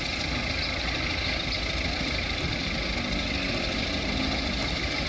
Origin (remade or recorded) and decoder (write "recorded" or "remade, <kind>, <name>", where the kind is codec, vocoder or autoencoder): recorded